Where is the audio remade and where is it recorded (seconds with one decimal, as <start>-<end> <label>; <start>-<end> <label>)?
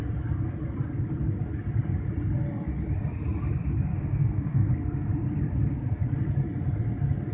0.0-3.9 recorded; 3.9-4.7 remade; 4.7-7.3 recorded